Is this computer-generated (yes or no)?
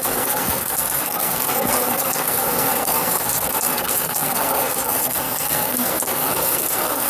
yes